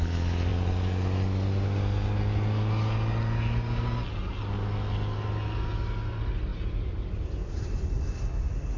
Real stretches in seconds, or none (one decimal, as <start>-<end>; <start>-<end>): 0.0-8.8